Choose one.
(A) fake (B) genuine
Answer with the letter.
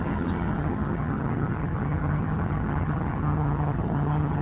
A